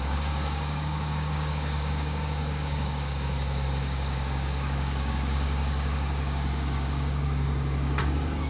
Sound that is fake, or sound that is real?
fake